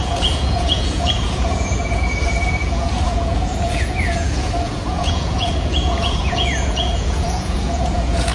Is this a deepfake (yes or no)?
yes